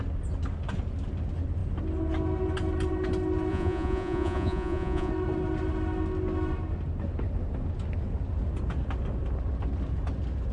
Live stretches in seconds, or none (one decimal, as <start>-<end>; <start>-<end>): 0.0-3.5; 5.1-10.5